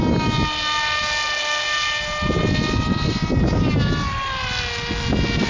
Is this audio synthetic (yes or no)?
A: no